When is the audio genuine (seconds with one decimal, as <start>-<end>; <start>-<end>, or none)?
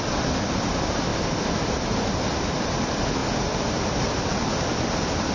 0.0-5.3